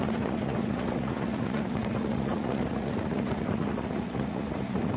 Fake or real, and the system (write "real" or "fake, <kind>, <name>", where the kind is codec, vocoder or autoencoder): fake, vocoder, Vocos